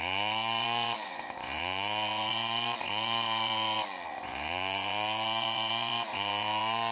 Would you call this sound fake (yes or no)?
yes